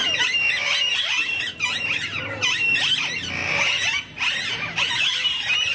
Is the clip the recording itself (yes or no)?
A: yes